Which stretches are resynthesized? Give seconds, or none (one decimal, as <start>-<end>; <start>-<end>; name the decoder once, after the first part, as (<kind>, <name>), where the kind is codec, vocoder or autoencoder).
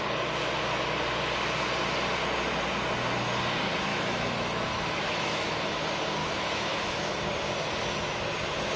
3.9-5.5 (autoencoder, DAC-VAE); 6.2-7.2